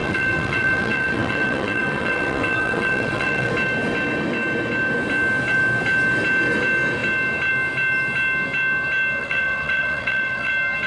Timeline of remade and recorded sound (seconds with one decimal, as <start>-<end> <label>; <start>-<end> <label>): 0.0-3.5 remade; 3.5-9.2 recorded; 9.2-10.5 remade; 10.5-10.9 recorded